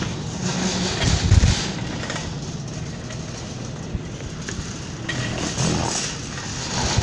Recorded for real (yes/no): yes